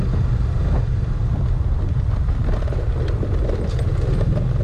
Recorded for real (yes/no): yes